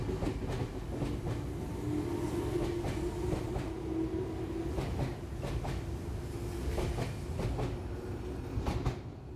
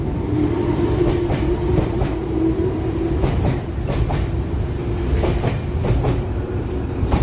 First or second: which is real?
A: first